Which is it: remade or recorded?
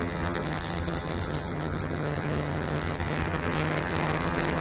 remade